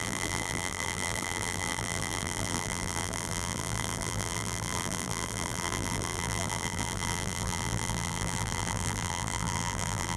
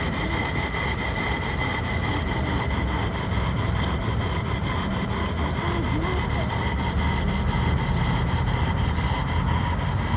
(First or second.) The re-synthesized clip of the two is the first